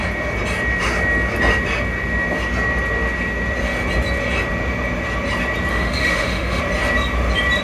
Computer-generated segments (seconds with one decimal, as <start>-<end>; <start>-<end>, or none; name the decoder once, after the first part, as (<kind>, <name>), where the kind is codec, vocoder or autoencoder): 5.7-6.6 (autoencoder, DAC-VAE)